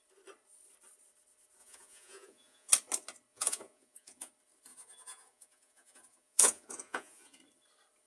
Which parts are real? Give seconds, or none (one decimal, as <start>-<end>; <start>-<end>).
0.0-1.6; 2.7-3.3; 4.3-4.7; 7.4-8.1